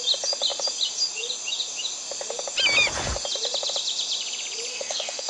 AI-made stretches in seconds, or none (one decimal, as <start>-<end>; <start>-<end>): 4.7-5.3